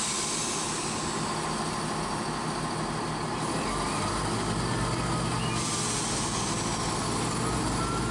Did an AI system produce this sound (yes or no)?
no